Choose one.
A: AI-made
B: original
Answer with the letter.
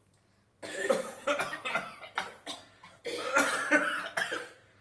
B